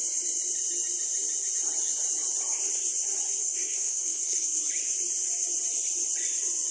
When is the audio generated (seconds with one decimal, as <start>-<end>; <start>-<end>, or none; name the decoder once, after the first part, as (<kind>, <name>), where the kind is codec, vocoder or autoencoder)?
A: 3.4-4.6 (codec, SNAC)